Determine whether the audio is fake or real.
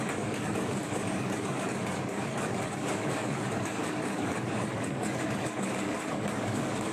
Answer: fake